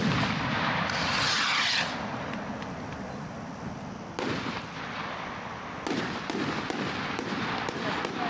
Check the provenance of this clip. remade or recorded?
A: recorded